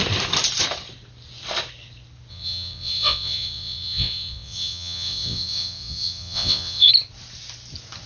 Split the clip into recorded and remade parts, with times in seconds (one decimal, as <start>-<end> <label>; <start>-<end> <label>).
0.0-2.3 recorded; 2.3-6.9 remade; 6.9-8.1 recorded